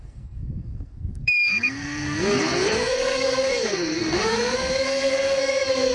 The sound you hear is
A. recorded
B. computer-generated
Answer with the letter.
B